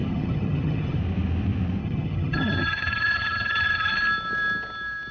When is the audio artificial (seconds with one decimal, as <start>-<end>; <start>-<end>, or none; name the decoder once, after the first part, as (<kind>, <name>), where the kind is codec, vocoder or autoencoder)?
0.0-1.0 (vocoder, HiFi-GAN); 1.8-3.9